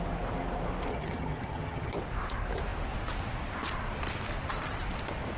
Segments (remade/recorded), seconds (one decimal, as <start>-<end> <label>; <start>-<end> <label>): 0.0-0.9 recorded; 0.9-1.9 remade; 1.9-5.4 recorded